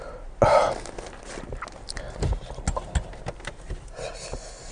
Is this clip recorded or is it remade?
recorded